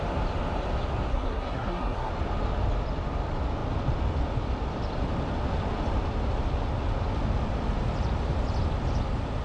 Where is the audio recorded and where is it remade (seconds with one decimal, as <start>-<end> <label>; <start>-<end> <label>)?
0.0-1.1 recorded; 1.1-2.1 remade; 2.1-9.4 recorded